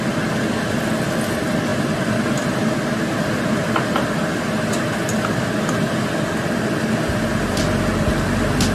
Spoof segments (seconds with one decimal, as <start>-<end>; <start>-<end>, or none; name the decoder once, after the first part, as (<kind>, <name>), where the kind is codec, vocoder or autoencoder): none